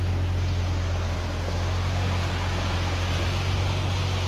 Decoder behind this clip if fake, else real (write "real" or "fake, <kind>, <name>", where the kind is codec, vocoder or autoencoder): real